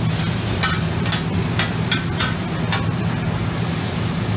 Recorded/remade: recorded